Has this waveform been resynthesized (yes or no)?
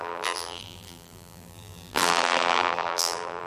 yes